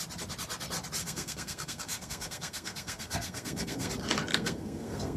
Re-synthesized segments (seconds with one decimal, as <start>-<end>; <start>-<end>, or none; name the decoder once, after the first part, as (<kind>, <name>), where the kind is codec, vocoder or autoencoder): 1.0-3.9 (codec, SNAC); 4.3-5.2